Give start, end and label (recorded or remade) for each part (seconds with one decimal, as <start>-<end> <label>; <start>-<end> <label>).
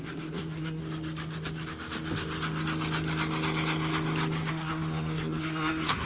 0.0-0.8 remade; 0.8-4.5 recorded; 4.5-6.1 remade